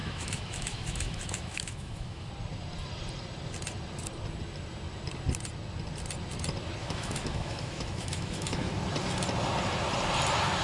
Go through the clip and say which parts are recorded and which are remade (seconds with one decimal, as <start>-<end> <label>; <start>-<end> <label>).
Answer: 0.0-2.3 remade; 2.3-6.8 recorded; 6.8-8.7 remade; 8.7-10.6 recorded